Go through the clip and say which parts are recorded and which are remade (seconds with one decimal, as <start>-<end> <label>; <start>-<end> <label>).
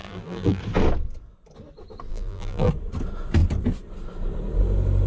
0.0-0.6 remade; 0.6-2.1 recorded; 2.1-2.7 remade; 2.7-5.1 recorded